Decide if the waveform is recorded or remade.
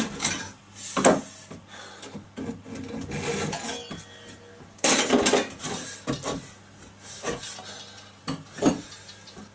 recorded